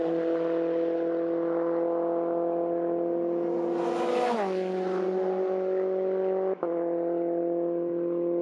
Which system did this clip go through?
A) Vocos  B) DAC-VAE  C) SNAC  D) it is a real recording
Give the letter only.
D